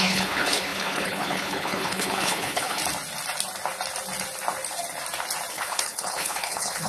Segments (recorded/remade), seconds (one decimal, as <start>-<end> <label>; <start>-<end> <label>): 0.0-2.8 remade; 2.8-5.5 recorded; 5.5-6.9 remade